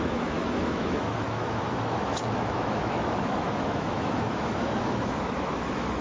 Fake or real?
fake